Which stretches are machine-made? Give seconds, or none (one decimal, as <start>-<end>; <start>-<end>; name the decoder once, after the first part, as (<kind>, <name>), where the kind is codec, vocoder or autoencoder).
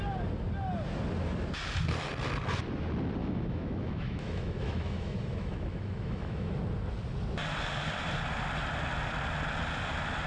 3.2-6.6 (autoencoder, DAC-VAE)